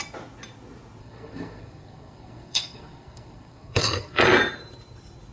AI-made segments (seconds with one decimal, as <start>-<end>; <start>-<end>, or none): 1.0-4.2